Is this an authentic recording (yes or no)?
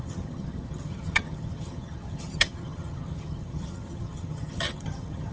no